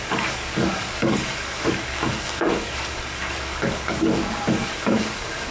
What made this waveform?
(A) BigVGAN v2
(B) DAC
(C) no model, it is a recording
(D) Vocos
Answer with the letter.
B